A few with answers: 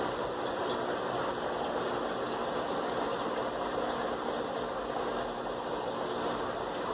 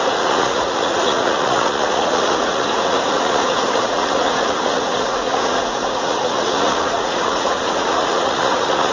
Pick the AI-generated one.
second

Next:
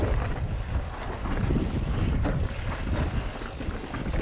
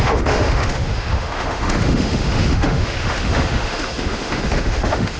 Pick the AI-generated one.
second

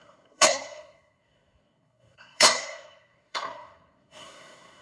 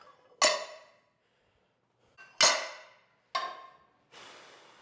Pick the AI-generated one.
first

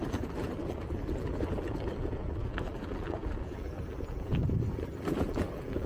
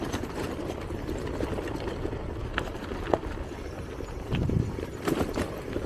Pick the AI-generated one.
first